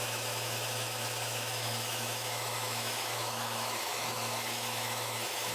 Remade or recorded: remade